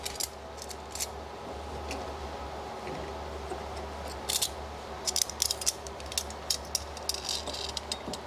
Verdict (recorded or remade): recorded